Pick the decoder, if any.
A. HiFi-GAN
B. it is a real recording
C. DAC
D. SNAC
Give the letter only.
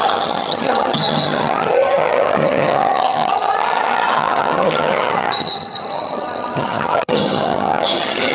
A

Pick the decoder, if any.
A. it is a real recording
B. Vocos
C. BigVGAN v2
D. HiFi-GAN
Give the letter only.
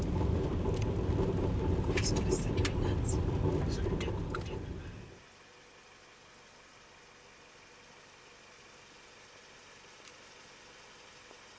A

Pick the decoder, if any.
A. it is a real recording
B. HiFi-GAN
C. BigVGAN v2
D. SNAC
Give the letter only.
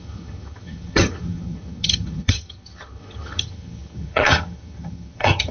B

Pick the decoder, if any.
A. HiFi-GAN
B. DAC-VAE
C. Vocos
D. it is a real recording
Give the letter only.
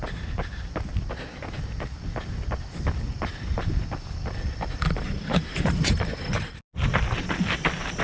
D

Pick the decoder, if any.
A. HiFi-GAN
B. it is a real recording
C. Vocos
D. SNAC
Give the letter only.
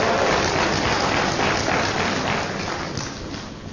B